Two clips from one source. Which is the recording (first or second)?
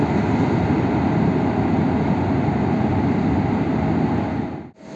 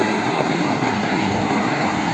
first